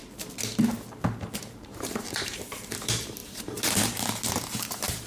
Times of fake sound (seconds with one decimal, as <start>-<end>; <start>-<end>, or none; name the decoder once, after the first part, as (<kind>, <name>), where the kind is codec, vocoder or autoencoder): 1.4-5.1 (vocoder, BigVGAN v2)